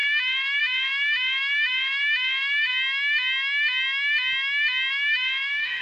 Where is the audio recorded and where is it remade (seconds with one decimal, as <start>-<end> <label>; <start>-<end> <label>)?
0.0-2.7 remade; 2.7-4.9 recorded; 4.9-5.8 remade